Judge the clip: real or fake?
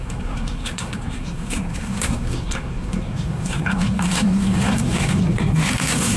fake